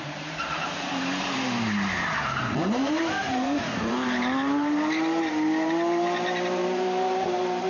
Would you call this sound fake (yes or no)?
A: yes